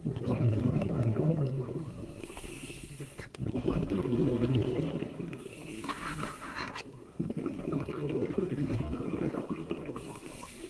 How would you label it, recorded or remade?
remade